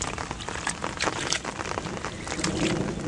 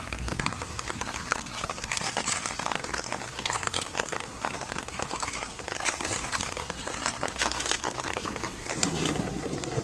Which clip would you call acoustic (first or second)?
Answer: first